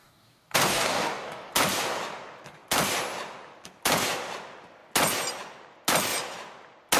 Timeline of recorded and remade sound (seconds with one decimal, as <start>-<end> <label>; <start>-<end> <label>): 0.0-1.5 remade; 1.5-7.0 recorded